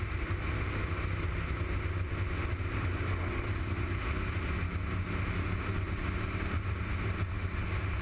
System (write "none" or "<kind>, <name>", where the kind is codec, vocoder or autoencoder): none